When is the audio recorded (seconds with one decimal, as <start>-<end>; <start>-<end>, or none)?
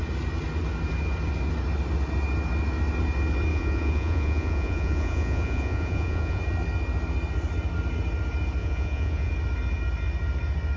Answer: 0.0-3.5; 6.4-8.6; 9.3-10.8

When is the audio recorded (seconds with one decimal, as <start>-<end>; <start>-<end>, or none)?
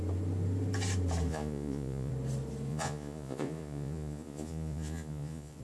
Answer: 0.0-1.3; 2.1-2.7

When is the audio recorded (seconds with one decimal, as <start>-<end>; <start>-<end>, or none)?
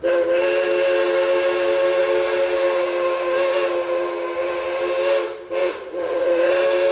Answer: 0.0-5.6; 6.5-6.9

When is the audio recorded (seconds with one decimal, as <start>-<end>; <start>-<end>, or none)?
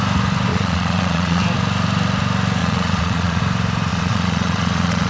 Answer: 0.0-0.5; 1.4-2.6; 3.4-3.9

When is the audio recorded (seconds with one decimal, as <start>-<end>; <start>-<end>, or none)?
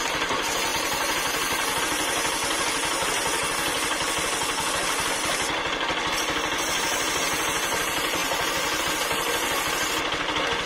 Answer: 0.0-10.7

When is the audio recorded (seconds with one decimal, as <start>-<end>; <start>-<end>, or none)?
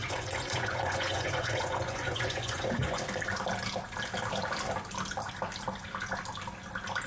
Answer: 3.0-7.1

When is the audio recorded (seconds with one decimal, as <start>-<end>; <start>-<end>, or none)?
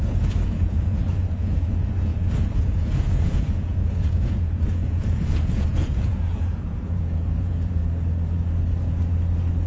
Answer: 7.8-9.7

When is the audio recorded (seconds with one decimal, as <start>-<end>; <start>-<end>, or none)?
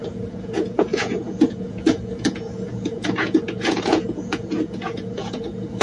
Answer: none